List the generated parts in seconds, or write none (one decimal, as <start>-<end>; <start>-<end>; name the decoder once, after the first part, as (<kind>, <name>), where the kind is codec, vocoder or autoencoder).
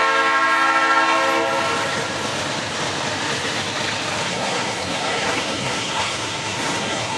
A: 4.3-7.2 (codec, SNAC)